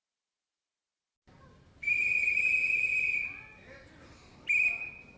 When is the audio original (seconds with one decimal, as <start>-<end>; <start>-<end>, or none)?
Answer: none